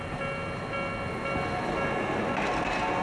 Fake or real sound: real